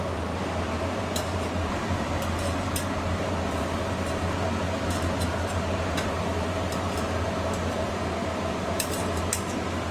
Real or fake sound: fake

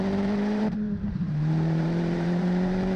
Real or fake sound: fake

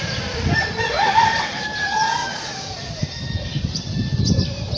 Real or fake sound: fake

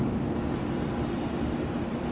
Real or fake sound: real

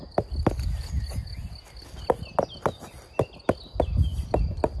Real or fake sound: real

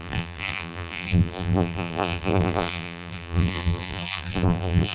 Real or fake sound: fake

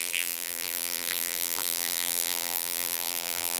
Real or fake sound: fake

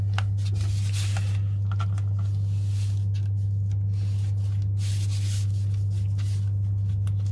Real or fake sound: real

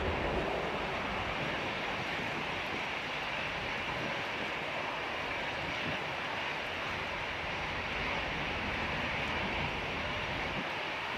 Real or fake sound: real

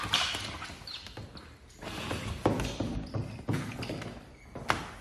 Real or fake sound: real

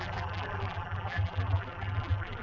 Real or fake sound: fake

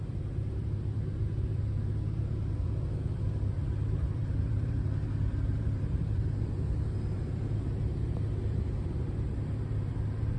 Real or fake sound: fake